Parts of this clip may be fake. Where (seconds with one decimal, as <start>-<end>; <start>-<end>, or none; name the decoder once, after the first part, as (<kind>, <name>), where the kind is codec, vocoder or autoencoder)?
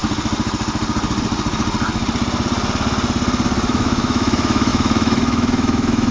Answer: 3.7-6.1 (autoencoder, DAC-VAE)